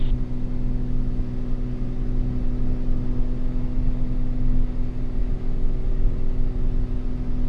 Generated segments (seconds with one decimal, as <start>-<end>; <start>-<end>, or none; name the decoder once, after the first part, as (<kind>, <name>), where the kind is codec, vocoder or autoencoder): none